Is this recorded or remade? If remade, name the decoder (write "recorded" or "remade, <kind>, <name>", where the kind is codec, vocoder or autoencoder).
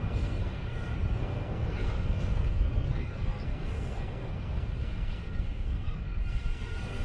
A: remade, codec, SNAC